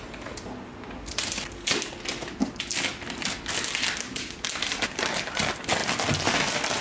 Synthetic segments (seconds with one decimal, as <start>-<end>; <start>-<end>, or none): none